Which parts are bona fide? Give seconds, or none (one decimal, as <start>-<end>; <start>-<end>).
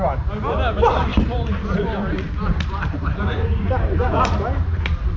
0.0-1.1; 4.2-5.2